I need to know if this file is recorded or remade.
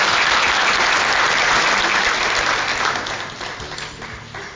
recorded